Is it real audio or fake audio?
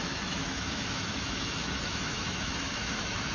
fake